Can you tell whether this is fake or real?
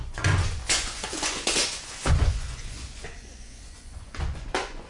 fake